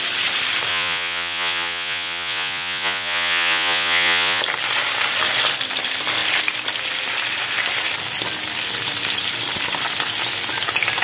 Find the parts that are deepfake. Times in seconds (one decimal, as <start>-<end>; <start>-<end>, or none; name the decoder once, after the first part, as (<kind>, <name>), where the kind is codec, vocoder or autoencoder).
0.7-4.4 (vocoder, Vocos)